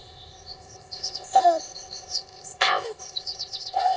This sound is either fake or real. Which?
fake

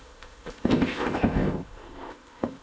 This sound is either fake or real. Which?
fake